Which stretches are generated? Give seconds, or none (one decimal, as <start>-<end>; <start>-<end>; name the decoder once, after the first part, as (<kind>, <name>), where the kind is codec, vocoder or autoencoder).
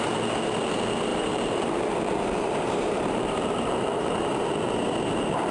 1.1-4.4 (vocoder, BigVGAN v2)